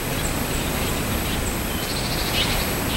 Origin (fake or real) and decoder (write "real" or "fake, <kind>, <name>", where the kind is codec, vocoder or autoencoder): real